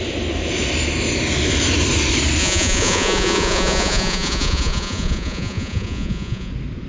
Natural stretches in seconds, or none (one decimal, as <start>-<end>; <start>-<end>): 0.0-2.4; 6.5-6.9